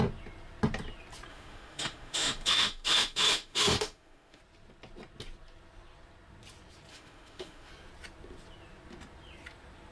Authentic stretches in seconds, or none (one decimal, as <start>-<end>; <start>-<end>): 0.0-1.3; 4.4-6.9; 7.7-9.9